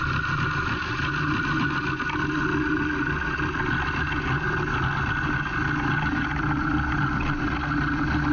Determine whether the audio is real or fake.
real